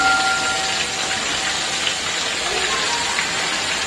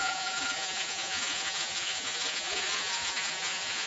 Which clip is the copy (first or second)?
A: second